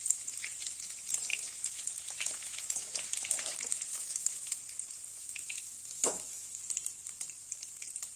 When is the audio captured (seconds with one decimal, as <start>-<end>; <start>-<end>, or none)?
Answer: 0.0-1.3; 3.3-3.9; 4.6-5.1; 6.6-8.2